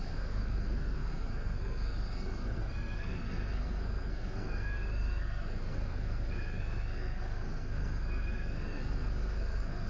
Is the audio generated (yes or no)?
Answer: yes